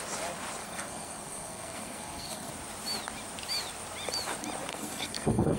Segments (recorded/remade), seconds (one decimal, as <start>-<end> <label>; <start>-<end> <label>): 0.0-0.6 recorded; 0.6-2.5 remade; 2.5-4.7 recorded; 4.7-5.6 remade